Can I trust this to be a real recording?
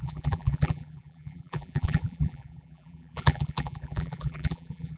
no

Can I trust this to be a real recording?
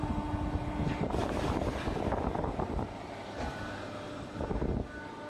yes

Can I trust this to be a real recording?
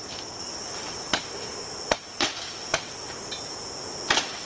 yes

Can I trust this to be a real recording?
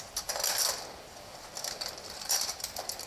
no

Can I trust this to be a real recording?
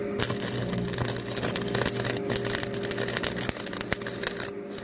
yes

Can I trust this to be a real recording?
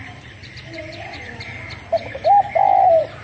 no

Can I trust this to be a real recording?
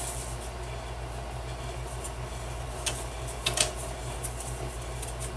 yes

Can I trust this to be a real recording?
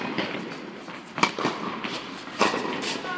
no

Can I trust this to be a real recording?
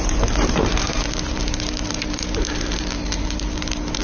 no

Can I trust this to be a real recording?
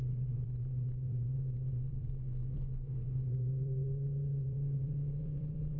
no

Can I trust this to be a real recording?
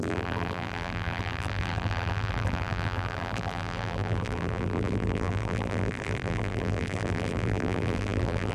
no